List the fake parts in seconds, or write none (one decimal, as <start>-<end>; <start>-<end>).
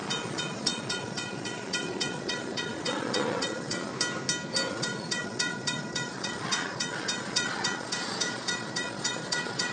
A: 0.0-3.9; 4.7-9.7